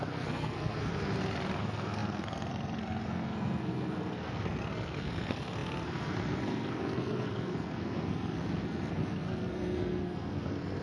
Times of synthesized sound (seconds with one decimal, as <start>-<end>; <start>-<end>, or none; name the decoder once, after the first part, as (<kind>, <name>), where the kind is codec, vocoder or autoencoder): 0.0-0.9 (codec, SNAC); 1.6-10.8